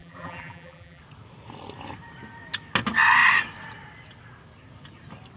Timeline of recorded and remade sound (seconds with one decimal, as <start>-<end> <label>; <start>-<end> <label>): 0.0-1.0 remade; 1.0-5.4 recorded